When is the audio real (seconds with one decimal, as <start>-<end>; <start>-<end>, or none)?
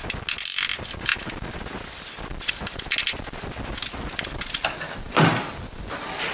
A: 0.0-6.3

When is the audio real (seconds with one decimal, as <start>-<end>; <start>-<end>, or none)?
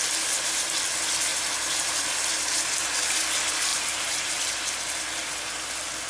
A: 0.0-1.3; 2.0-3.7; 4.3-6.1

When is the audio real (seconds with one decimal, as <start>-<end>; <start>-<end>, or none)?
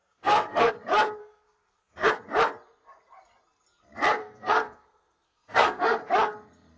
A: 0.7-1.2; 2.1-4.2; 6.1-6.8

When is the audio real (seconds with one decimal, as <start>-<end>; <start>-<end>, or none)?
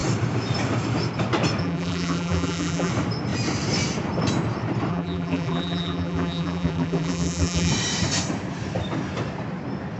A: 0.0-1.6; 2.9-4.9; 7.7-10.0